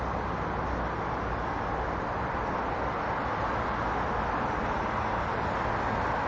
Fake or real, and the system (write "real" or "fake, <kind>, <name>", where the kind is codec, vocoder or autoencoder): real